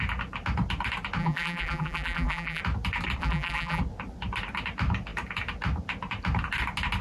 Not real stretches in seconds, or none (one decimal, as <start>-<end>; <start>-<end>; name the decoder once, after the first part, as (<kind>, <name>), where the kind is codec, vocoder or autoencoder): 1.2-2.6 (vocoder, BigVGAN v2); 3.2-3.8